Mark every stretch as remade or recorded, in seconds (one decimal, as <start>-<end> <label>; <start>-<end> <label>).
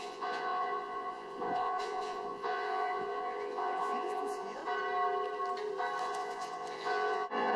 0.0-4.6 remade; 4.6-6.0 recorded; 6.0-7.6 remade